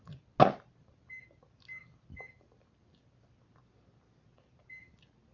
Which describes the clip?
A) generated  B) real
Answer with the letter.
B